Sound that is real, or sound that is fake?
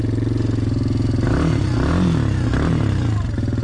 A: real